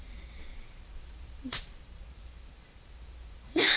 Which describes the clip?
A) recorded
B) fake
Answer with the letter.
B